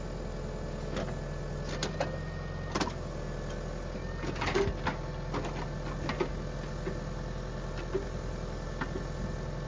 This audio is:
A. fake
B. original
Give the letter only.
B